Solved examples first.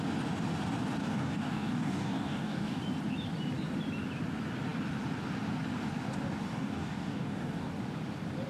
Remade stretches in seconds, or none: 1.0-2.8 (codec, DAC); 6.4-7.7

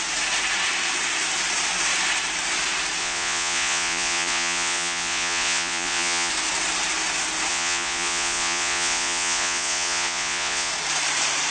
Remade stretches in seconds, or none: 3.0-6.3 (vocoder, Vocos); 7.5-10.7